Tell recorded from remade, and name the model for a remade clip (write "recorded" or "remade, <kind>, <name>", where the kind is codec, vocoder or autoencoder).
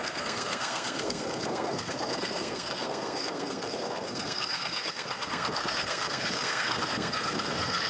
remade, codec, SNAC